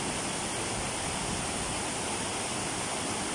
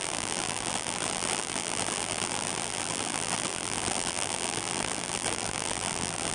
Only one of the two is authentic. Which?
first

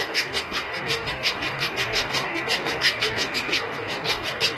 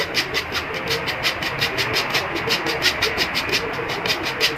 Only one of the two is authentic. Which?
second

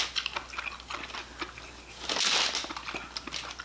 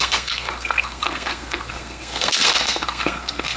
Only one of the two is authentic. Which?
first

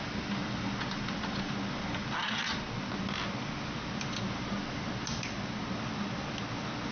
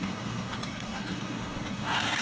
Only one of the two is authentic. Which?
first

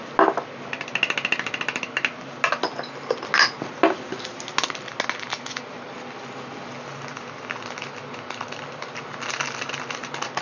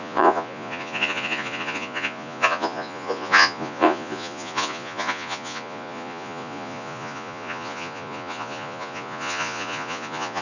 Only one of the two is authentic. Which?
first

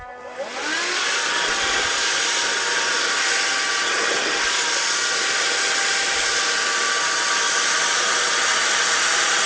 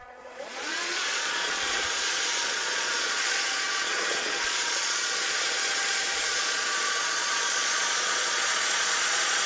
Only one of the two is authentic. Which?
first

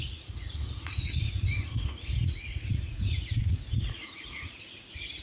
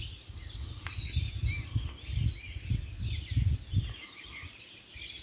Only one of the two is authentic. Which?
second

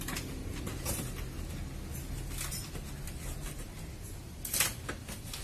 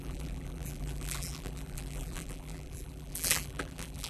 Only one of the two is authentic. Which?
first